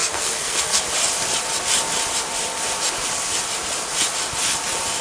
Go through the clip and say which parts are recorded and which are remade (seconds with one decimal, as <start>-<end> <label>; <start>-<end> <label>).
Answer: 0.0-0.8 remade; 0.8-5.0 recorded